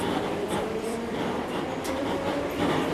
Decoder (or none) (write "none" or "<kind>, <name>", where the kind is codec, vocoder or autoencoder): vocoder, BigVGAN v2